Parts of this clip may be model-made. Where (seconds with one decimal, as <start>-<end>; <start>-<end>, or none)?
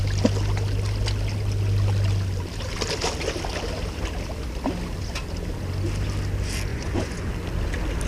6.7-7.3